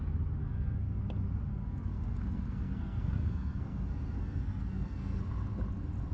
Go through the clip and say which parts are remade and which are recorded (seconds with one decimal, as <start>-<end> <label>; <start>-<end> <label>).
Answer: 0.0-0.4 recorded; 0.4-1.0 remade; 1.0-1.5 recorded; 1.5-5.2 remade; 5.2-6.1 recorded